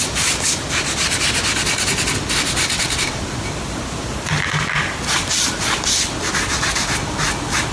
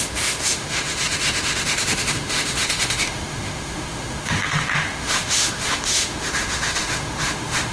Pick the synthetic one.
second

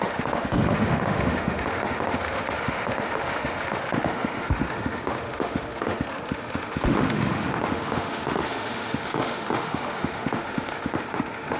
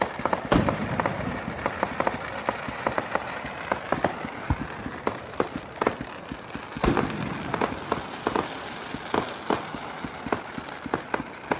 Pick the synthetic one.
first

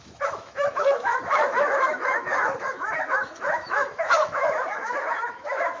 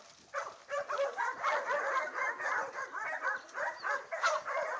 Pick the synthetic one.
first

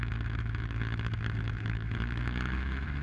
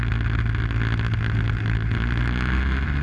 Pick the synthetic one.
first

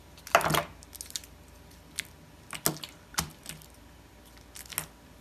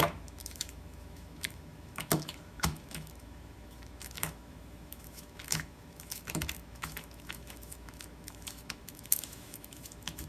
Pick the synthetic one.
second